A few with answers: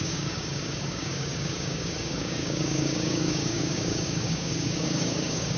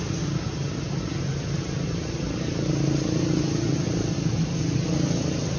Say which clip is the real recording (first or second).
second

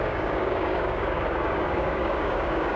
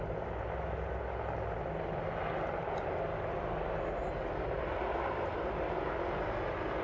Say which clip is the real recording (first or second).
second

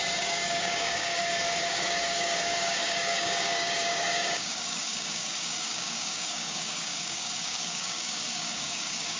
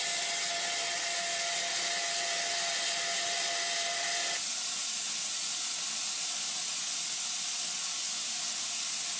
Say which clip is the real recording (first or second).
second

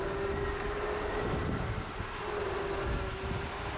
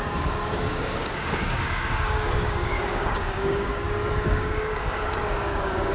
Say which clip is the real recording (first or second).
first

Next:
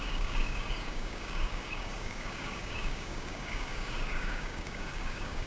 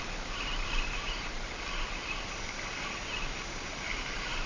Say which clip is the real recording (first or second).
second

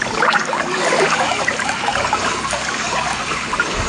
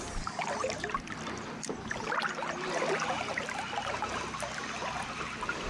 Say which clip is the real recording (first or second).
second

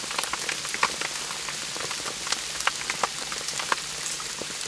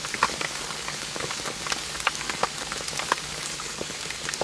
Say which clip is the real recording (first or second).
first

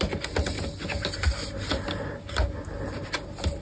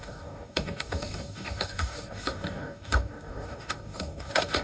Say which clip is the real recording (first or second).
first